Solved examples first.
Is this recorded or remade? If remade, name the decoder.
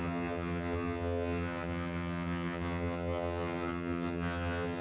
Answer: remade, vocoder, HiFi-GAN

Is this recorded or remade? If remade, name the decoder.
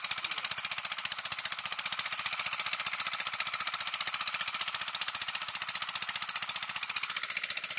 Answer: recorded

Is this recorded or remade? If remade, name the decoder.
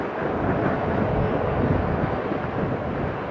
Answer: recorded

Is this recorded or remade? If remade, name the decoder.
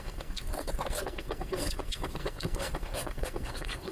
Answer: remade, codec, SNAC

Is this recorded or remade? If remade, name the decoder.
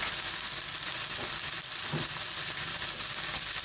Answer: recorded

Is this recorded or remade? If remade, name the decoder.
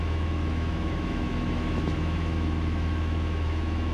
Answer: remade, autoencoder, DAC-VAE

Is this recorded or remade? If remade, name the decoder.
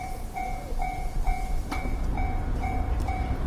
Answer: remade, vocoder, BigVGAN v2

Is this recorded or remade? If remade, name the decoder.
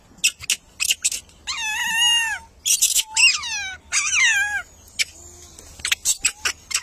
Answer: recorded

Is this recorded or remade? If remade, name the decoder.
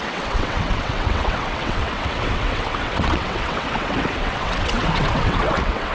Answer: remade, vocoder, WaveNeXt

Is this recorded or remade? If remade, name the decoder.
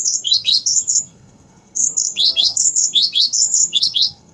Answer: remade, codec, SNAC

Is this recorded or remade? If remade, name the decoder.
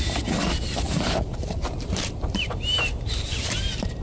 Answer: remade, vocoder, BigVGAN v2